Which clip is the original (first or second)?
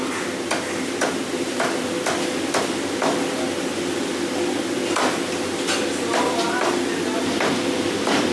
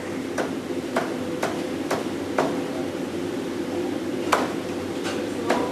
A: first